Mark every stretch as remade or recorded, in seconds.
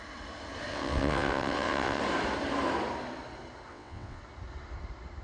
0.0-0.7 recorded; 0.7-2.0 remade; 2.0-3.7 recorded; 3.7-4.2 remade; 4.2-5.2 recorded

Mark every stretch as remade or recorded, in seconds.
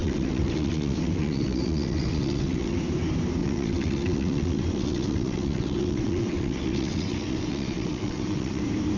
0.0-2.8 remade; 2.8-3.4 recorded; 3.4-8.6 remade; 8.6-9.0 recorded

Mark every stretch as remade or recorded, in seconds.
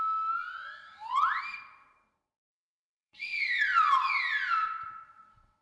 0.0-0.4 recorded; 0.4-1.4 remade; 1.4-2.5 recorded; 2.5-5.6 remade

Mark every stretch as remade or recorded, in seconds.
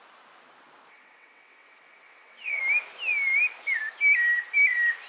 0.0-0.9 recorded; 0.9-2.6 remade; 2.6-5.1 recorded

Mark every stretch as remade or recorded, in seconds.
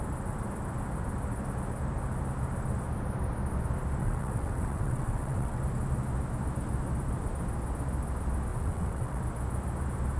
0.0-4.0 recorded; 4.0-5.6 remade; 5.6-8.5 recorded; 8.5-9.2 remade; 9.2-10.2 recorded